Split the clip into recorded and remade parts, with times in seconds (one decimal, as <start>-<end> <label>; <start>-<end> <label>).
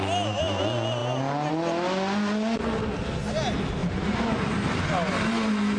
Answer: 0.0-3.8 recorded; 3.8-4.7 remade; 4.7-5.8 recorded